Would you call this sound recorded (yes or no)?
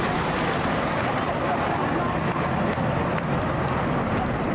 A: yes